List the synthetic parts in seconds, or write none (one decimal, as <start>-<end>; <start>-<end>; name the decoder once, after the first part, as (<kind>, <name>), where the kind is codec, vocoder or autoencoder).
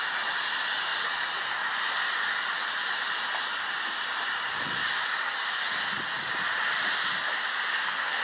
7.7-8.2 (codec, SNAC)